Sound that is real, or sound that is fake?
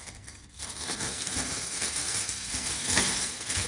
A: fake